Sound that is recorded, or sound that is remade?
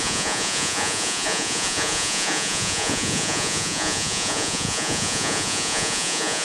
remade